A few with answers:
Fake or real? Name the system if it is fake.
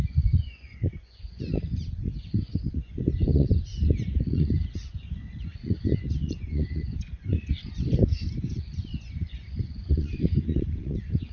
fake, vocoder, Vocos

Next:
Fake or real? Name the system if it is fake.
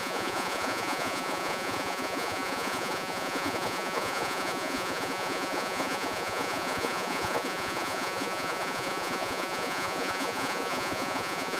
fake, vocoder, Vocos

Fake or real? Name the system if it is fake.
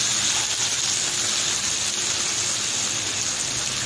real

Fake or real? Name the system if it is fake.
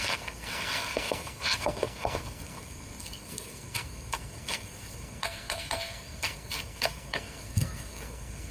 fake, codec, SNAC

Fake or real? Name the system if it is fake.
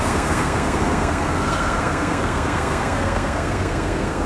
fake, codec, SNAC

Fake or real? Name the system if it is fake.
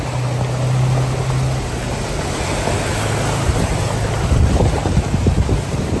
real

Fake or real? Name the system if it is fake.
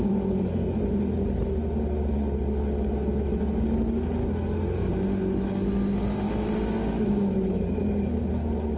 real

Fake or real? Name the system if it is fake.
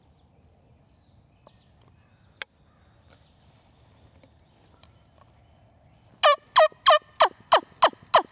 real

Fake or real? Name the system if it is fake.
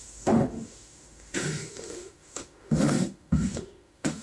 fake, autoencoder, DAC-VAE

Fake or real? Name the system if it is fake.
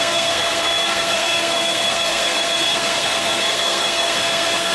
fake, codec, SNAC